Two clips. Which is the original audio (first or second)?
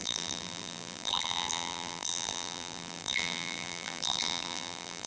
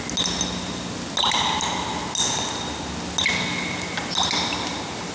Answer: second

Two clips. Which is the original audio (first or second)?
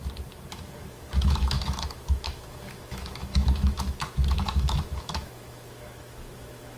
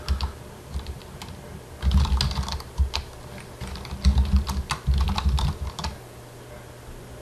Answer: second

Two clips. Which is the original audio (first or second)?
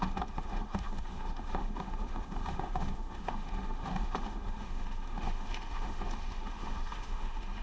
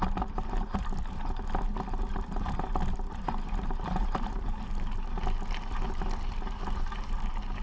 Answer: second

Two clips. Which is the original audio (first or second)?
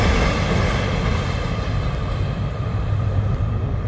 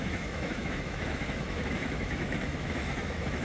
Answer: first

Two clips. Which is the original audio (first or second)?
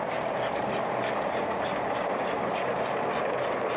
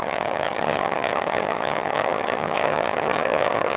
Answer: first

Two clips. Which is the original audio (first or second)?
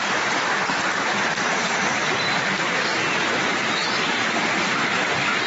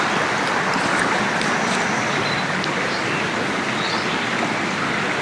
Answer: second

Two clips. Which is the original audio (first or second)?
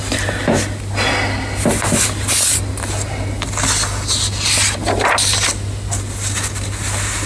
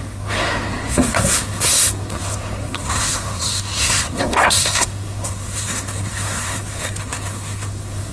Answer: first